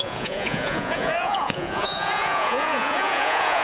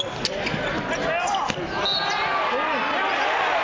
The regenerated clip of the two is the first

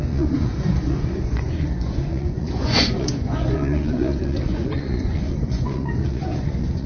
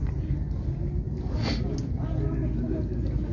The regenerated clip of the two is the first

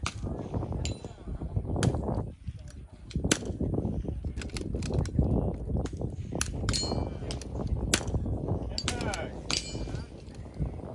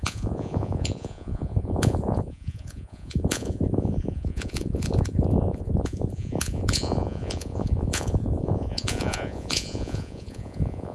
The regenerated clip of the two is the second